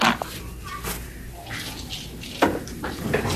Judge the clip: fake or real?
real